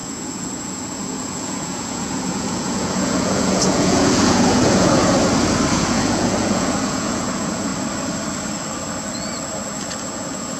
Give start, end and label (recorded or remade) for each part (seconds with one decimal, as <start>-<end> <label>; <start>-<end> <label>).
0.0-5.0 remade; 5.0-5.7 recorded; 5.7-7.7 remade; 7.7-10.0 recorded; 10.0-10.6 remade